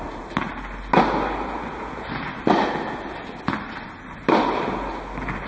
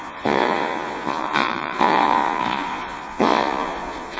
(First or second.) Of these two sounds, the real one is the first